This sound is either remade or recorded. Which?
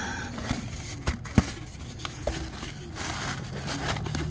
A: recorded